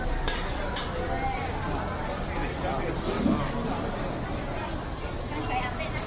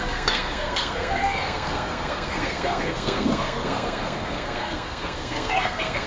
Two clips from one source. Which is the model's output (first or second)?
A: second